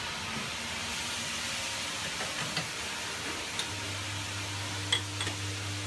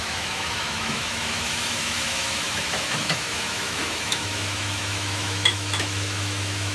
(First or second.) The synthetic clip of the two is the second